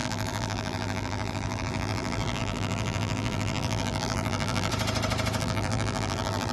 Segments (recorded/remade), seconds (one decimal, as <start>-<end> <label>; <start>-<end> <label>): 0.0-4.7 remade; 4.7-5.4 recorded; 5.4-6.5 remade